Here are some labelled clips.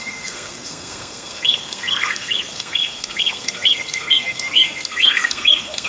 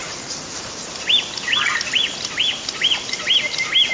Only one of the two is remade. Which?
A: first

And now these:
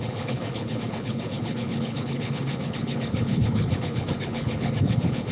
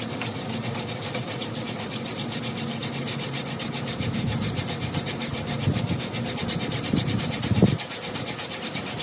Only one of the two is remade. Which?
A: first